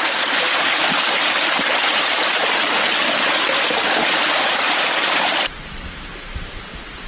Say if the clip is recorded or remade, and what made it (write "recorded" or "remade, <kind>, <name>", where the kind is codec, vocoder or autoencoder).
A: recorded